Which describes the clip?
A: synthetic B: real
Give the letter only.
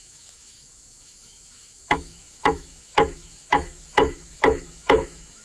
A